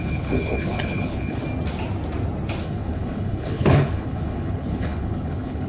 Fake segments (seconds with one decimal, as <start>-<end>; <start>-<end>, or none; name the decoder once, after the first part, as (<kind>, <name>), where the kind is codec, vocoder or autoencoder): 0.0-1.4 (codec, HILCodec); 2.6-5.7